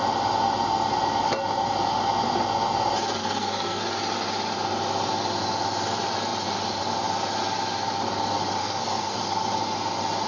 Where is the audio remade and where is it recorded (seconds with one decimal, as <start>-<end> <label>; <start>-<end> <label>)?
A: 0.0-3.2 recorded; 3.2-3.8 remade; 3.8-8.6 recorded; 8.6-9.2 remade; 9.2-10.3 recorded